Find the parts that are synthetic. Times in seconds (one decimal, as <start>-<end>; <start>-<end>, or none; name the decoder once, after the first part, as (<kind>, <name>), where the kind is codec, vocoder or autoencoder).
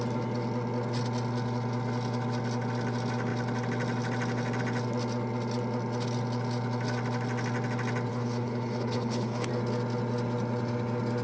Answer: 8.1-9.5 (codec, HILCodec)